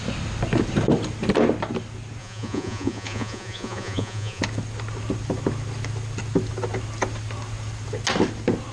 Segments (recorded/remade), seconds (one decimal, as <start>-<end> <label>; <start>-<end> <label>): 0.0-2.2 recorded; 2.2-4.4 remade; 4.4-8.7 recorded